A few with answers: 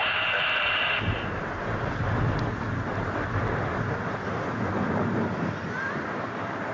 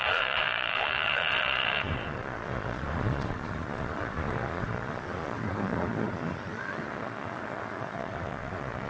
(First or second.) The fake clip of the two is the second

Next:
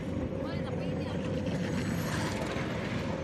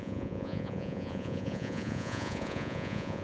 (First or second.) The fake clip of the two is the second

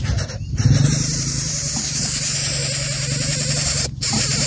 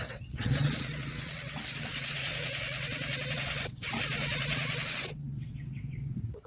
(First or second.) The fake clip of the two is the second